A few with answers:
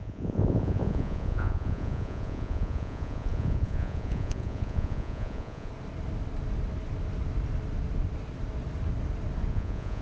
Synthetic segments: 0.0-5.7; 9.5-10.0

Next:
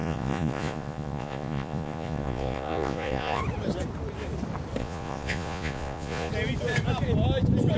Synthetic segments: 0.0-3.4; 4.8-6.3

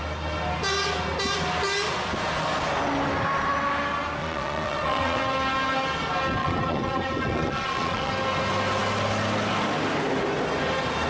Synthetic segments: 4.2-5.2; 6.4-8.1